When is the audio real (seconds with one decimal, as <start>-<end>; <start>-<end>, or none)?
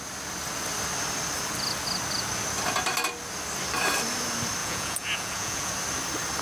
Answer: 0.0-4.6; 5.7-6.4